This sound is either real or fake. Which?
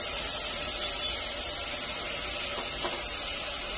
real